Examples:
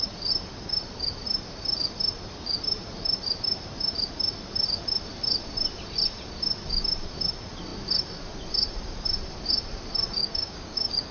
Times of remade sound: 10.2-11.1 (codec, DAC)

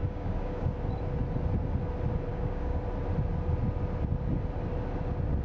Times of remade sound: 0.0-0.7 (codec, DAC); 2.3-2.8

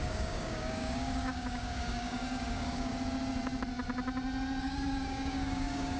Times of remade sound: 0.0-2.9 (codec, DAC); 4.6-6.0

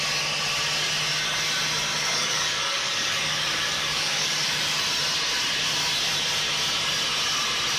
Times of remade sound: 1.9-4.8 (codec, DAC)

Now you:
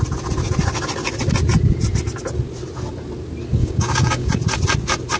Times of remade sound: 3.6-4.3 (codec, DAC)

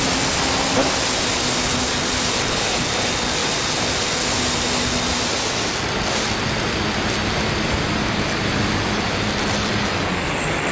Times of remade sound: none

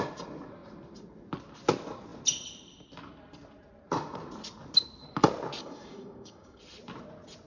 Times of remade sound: 5.6-6.6 (codec, DAC)

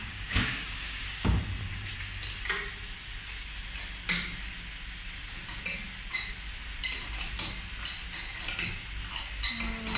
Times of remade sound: 0.0-1.4 (codec, DAC)